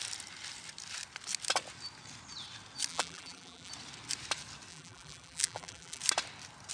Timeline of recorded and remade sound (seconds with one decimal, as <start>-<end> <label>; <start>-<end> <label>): 0.0-2.9 recorded; 2.9-3.7 remade; 3.7-4.7 recorded; 4.7-6.0 remade; 6.0-6.7 recorded